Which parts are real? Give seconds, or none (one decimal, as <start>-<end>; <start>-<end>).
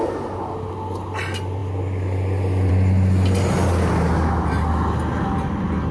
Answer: 0.0-5.9